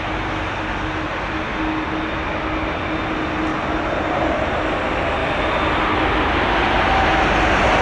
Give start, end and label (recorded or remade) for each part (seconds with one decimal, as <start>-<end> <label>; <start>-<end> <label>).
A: 0.0-3.5 recorded; 3.5-4.5 remade; 4.5-7.8 recorded